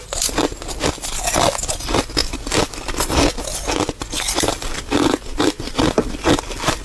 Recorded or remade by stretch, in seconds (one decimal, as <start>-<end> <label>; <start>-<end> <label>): 0.0-6.8 recorded